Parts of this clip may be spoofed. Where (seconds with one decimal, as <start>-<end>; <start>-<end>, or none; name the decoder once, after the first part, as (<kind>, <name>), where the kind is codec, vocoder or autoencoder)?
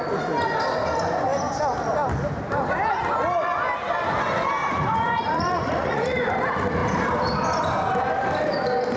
4.6-6.3 (vocoder, Vocos)